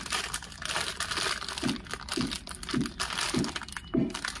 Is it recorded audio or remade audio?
recorded